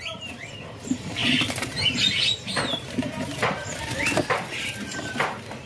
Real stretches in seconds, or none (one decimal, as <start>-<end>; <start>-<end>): none